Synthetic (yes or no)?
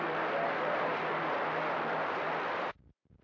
no